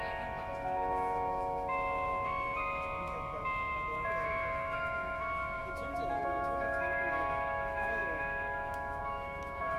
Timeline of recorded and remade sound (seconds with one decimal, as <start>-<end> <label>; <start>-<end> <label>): 0.0-9.8 remade